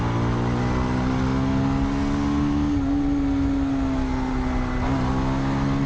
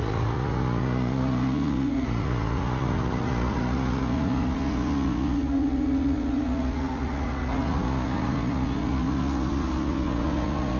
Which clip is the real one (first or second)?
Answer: first